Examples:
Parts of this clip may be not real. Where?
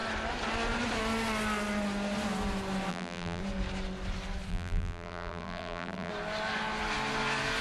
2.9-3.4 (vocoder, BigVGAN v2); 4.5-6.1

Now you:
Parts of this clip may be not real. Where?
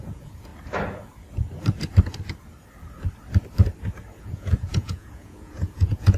0.0-0.5 (vocoder, Vocos); 4.2-6.2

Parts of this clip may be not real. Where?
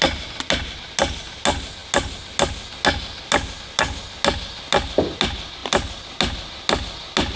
none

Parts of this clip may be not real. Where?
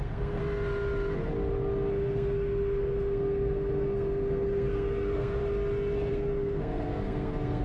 0.0-0.4 (codec, SNAC); 1.9-5.4; 6.1-7.6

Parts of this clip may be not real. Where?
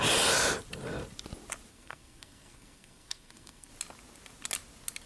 1.7-3.7 (codec, SNAC)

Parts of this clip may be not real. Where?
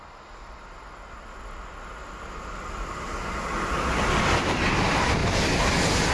none